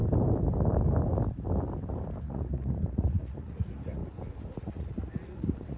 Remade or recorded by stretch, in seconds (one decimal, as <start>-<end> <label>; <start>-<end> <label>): 0.0-2.2 recorded; 2.2-4.0 remade; 4.0-4.6 recorded; 4.6-5.8 remade